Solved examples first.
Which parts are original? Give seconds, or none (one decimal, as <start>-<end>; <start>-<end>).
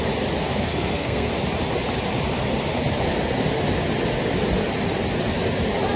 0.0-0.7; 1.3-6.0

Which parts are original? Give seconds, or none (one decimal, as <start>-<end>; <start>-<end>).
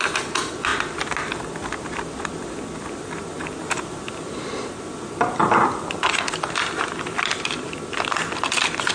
0.0-8.9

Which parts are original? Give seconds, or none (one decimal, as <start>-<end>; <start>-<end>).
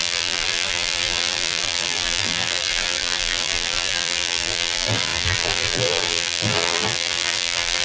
none